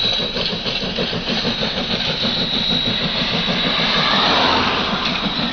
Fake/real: fake